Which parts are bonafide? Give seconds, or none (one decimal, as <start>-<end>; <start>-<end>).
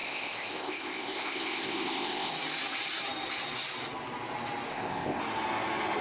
2.3-4.7; 5.2-6.0